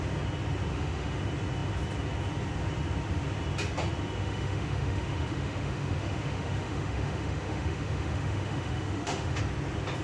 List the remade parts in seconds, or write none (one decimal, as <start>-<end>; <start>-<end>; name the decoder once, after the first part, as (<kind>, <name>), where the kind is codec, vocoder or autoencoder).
0.7-1.2 (autoencoder, DAC-VAE); 4.2-9.4